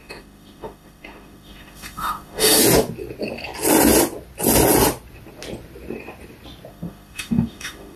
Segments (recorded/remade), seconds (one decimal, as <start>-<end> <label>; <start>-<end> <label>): 0.0-2.6 remade; 2.6-6.7 recorded; 6.7-8.0 remade